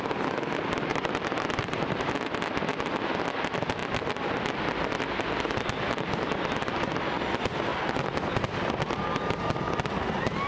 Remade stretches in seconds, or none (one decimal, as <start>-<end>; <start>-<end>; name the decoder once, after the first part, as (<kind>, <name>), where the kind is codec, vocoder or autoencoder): 0.9-2.1 (vocoder, BigVGAN v2)